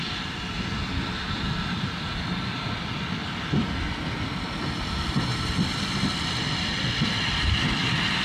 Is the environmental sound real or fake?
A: real